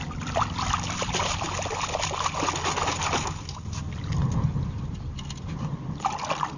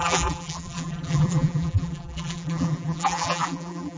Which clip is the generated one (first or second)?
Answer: second